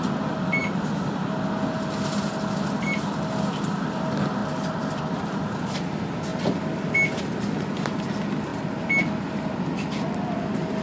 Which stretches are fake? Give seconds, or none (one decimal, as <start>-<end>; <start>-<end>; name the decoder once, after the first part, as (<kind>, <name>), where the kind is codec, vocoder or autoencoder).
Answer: none

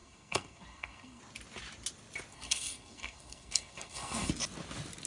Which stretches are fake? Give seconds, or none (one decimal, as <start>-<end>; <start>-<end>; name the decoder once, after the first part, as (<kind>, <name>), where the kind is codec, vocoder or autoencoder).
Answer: 0.0-1.2 (codec, SNAC); 2.3-4.3

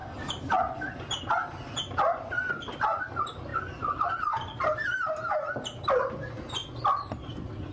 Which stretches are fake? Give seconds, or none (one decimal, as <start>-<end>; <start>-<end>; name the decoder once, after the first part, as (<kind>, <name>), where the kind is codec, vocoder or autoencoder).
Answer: none

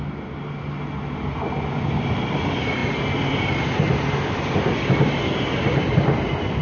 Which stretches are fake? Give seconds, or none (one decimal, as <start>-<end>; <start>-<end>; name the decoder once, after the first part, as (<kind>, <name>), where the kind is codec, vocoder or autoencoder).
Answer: none